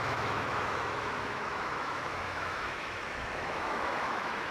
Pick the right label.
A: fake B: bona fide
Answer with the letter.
A